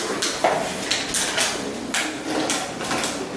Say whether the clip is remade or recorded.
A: recorded